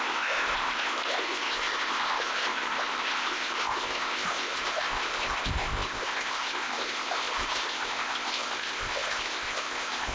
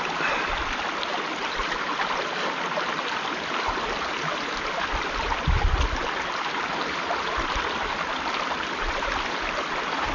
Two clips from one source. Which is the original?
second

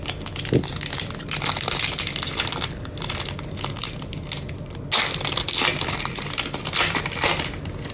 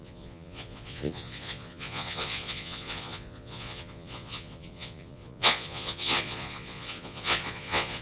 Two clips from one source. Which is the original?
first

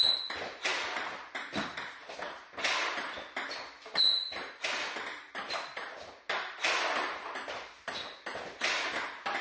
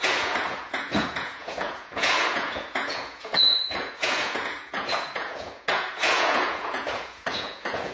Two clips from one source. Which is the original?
first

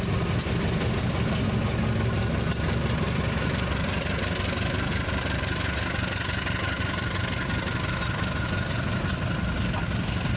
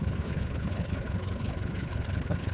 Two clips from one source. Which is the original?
first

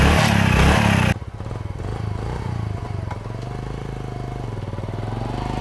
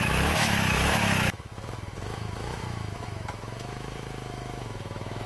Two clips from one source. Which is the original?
first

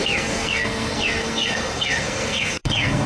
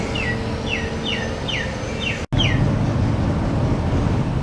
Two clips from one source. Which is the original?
second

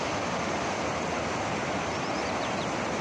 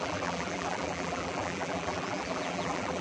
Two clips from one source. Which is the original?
first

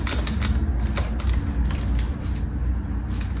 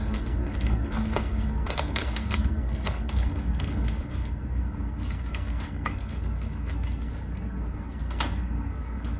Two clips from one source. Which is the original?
first